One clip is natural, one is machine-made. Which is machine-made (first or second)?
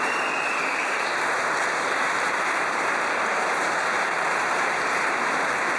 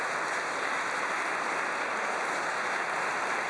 first